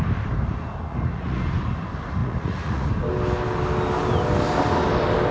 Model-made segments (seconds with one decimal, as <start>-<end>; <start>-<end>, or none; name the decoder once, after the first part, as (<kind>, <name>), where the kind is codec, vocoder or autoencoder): 0.9-1.4 (vocoder, Vocos); 2.2-2.9

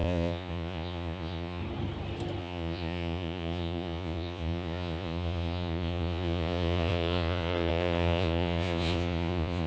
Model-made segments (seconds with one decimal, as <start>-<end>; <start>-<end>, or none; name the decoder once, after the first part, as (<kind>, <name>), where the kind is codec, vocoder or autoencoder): 0.0-1.6 (vocoder, Vocos); 2.4-9.7

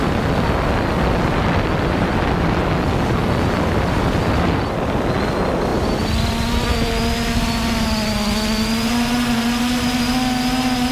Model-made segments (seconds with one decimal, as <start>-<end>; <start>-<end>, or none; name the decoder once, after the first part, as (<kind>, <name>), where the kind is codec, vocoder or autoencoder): none

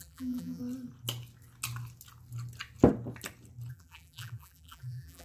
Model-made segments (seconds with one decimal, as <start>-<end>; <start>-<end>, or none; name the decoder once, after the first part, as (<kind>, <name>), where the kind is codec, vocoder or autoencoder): 0.0-0.6 (vocoder, BigVGAN v2); 3.7-5.2

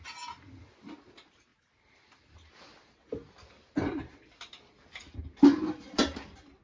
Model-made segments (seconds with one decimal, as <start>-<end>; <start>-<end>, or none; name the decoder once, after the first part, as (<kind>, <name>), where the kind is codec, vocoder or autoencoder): none

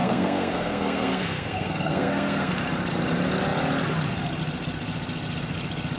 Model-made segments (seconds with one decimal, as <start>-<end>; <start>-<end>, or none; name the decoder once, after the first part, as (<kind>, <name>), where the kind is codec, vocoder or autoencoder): 0.0-2.5 (codec, SNAC)